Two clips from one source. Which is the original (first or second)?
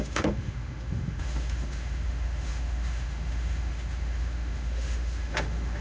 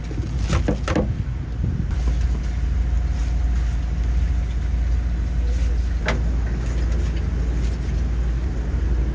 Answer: second